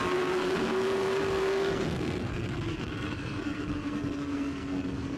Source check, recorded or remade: remade